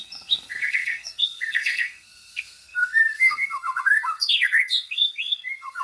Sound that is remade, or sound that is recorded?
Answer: remade